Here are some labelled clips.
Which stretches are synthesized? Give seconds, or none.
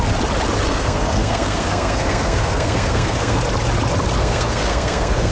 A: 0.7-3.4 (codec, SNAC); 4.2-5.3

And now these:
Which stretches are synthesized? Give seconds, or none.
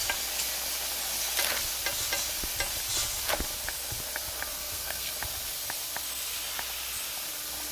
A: 4.5-5.1 (codec, SNAC)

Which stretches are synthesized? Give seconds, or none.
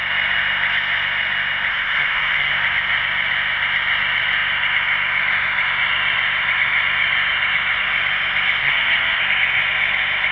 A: 1.7-2.5 (codec, SNAC); 8.6-9.2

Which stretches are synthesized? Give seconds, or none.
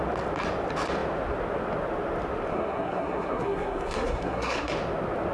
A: 2.5-4.7 (codec, SNAC)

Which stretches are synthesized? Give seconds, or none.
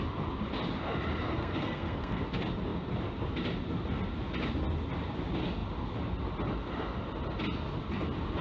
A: 1.3-2.2 (codec, SNAC)